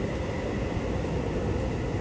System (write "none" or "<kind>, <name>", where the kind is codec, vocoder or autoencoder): none